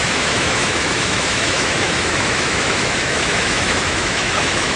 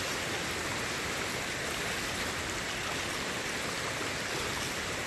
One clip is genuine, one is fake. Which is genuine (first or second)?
second